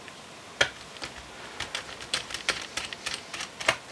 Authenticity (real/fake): real